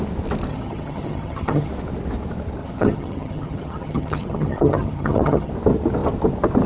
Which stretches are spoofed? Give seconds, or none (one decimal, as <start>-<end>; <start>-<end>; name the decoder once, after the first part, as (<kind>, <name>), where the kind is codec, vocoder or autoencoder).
0.5-1.7 (vocoder, HiFi-GAN); 2.6-5.5